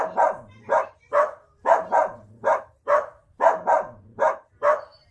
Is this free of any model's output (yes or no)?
no